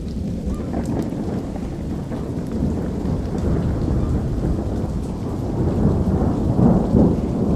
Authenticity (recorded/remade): recorded